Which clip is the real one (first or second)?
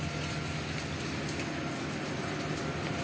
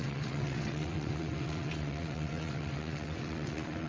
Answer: first